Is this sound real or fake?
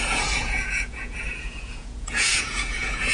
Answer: fake